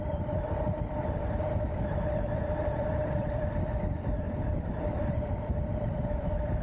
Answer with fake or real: fake